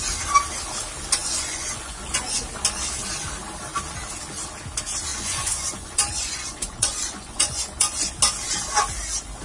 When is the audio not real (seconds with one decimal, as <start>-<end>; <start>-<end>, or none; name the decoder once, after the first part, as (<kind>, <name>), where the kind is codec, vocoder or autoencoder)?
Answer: 1.2-2.4 (vocoder, Vocos); 5.1-8.1